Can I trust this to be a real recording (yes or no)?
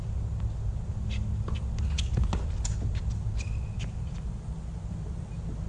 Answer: yes